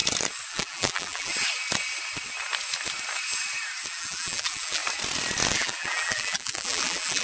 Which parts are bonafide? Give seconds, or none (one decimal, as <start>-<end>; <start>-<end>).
0.0-0.5; 1.3-3.9; 4.8-5.5